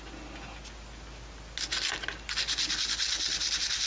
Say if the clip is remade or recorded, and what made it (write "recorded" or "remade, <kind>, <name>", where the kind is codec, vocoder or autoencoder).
recorded